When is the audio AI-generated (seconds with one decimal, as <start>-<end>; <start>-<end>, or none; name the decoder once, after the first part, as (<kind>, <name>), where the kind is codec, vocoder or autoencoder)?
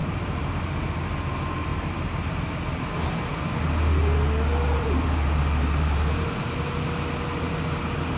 0.0-0.6 (vocoder, BigVGAN v2); 1.7-2.5; 4.5-6.4